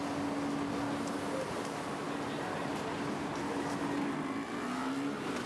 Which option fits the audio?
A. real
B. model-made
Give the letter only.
A